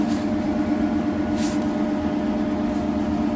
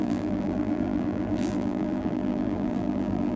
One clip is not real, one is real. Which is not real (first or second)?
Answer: second